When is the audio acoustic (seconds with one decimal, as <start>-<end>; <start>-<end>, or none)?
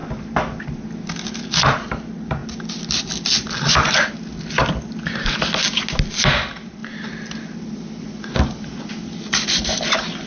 0.0-10.3